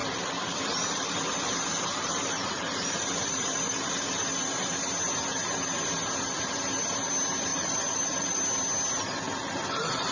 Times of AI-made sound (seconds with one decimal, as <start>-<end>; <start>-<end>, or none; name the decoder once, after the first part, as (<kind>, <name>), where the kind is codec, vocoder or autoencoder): 0.0-4.7 (vocoder, BigVGAN v2); 7.5-8.4